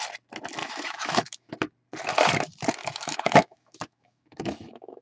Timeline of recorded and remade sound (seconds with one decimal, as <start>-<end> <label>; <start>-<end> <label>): 0.0-0.6 recorded; 0.6-1.5 remade; 1.5-2.8 recorded; 2.8-5.0 remade